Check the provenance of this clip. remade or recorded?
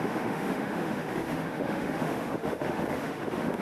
remade